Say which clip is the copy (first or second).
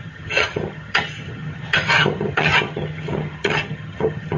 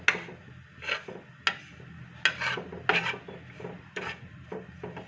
first